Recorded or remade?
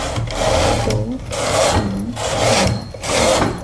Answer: recorded